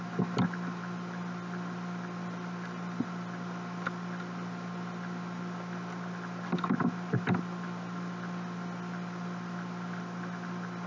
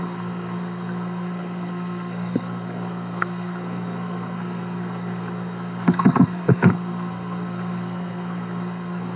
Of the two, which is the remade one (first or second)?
second